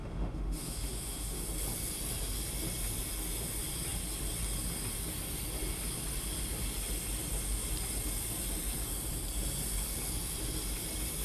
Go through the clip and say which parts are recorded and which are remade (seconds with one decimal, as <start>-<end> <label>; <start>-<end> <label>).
0.0-1.4 remade; 1.4-11.2 recorded